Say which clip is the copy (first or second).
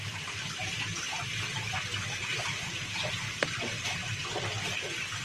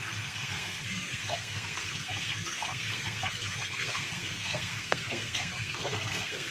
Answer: second